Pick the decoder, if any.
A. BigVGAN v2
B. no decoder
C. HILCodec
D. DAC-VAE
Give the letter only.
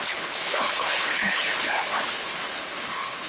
C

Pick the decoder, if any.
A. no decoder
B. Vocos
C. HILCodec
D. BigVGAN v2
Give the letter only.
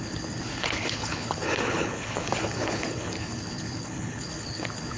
C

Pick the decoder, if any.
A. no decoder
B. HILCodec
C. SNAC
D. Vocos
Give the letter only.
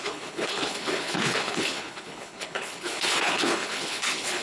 B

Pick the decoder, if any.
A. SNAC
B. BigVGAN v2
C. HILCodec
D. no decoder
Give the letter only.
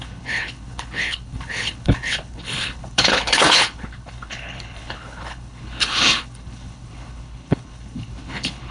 C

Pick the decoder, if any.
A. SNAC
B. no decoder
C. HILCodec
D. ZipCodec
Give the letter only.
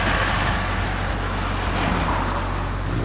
B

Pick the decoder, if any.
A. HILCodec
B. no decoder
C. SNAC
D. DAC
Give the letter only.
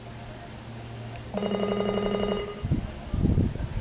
B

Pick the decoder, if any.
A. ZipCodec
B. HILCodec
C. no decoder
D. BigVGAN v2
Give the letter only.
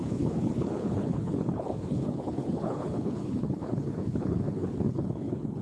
B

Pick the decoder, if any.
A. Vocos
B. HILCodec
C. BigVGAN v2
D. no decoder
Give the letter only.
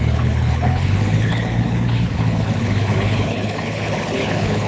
B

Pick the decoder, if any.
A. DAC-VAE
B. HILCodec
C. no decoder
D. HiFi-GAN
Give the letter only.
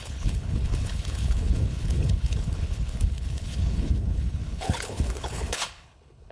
B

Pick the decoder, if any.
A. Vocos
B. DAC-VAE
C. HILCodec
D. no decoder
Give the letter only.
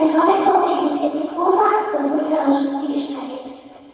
C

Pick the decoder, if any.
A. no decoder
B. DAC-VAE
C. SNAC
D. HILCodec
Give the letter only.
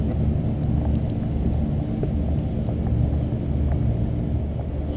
A